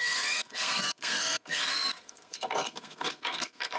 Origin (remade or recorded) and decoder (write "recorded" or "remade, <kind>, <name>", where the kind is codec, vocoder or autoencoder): remade, codec, SNAC